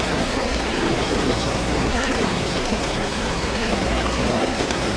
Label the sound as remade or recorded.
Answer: remade